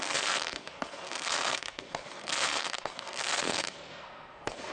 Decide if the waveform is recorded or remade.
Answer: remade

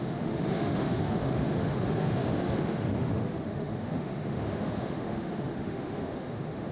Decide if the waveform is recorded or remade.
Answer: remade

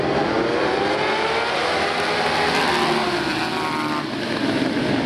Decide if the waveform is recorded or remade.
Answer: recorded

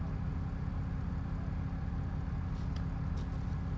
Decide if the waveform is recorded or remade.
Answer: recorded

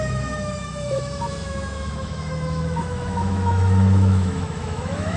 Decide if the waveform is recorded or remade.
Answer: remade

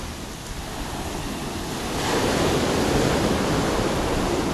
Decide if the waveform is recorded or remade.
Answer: recorded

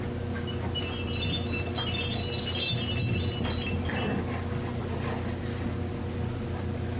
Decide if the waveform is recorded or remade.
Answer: recorded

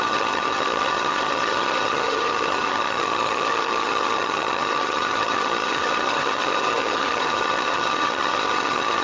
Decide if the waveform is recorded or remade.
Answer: remade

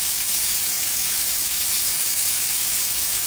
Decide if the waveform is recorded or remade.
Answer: remade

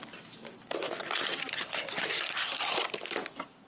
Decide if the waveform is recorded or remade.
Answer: recorded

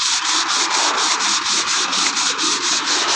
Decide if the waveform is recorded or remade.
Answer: recorded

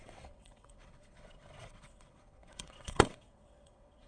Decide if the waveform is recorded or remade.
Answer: remade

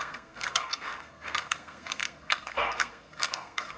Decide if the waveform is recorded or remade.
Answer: remade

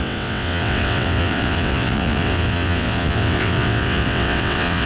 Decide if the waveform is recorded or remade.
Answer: remade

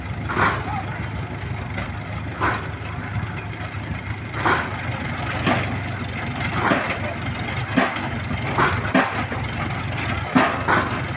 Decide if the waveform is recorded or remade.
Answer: recorded